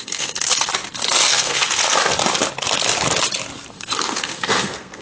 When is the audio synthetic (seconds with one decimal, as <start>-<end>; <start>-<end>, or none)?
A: 0.0-0.7; 1.3-1.8; 3.7-5.0